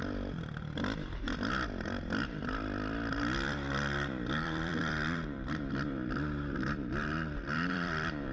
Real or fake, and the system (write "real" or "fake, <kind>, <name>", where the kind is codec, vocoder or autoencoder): fake, vocoder, BigVGAN v2